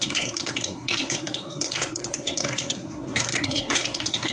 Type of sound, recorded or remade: remade